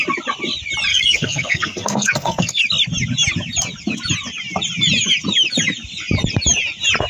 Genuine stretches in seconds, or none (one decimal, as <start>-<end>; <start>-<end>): 0.0-0.9; 2.6-7.1